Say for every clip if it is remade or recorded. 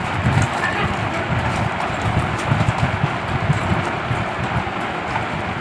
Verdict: recorded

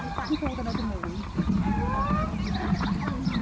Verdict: recorded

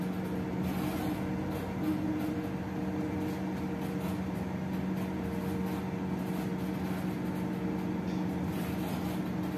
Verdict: recorded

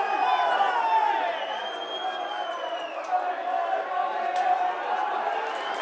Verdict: recorded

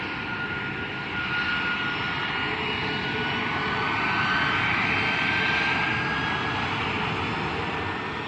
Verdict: recorded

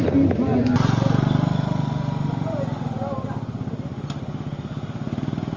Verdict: recorded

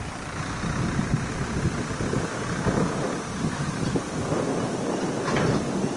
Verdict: recorded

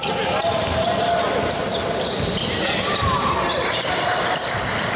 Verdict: recorded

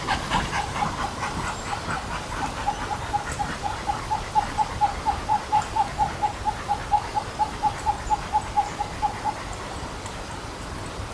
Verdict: recorded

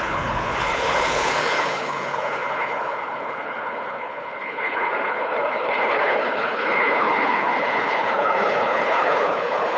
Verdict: remade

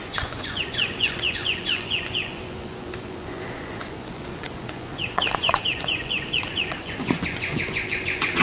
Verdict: remade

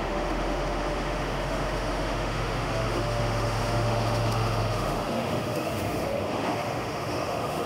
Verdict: remade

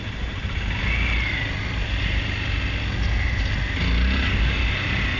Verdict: recorded